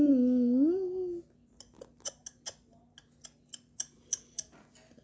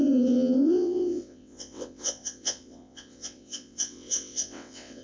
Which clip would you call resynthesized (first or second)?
second